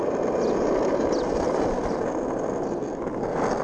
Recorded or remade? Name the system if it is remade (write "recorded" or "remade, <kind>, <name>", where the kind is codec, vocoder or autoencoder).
recorded